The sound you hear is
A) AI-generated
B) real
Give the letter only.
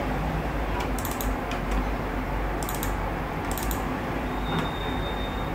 B